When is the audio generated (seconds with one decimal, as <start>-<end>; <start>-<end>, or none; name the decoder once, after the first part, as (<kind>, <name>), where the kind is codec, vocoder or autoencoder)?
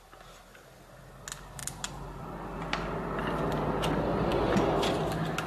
none